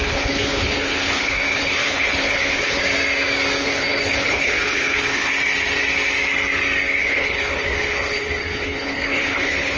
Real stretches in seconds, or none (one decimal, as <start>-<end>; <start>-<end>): 2.8-3.6; 5.3-7.0